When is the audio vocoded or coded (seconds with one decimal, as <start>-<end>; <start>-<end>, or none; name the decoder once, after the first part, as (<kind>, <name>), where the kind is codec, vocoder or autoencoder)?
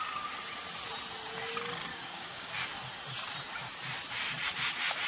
1.9-2.5 (codec, DAC)